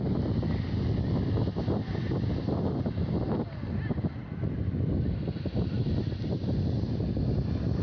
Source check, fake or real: real